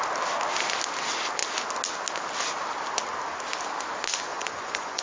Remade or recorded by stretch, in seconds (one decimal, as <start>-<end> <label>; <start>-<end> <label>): 0.0-4.3 recorded; 4.3-5.0 remade